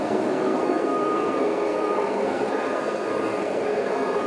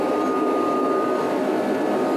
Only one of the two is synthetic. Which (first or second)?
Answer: first